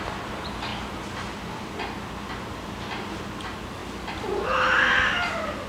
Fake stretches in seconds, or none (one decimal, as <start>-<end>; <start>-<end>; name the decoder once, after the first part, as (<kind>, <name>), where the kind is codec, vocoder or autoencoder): none

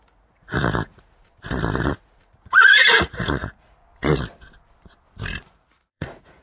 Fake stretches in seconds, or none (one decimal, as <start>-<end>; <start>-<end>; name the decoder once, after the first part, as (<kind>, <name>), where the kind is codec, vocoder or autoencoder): 0.0-1.3 (vocoder, Vocos); 1.9-3.8; 5.3-6.4

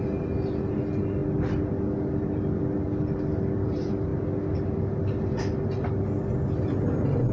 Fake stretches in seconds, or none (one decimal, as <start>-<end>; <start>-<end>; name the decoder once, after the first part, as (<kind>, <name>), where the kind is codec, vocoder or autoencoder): none

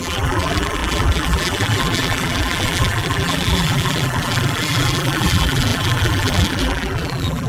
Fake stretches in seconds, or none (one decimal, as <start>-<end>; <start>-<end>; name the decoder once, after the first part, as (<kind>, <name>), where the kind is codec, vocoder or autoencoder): 0.0-7.5 (vocoder, BigVGAN v2)